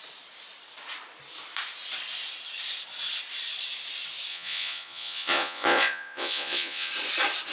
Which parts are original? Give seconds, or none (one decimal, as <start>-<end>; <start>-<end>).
0.0-4.3; 6.9-7.5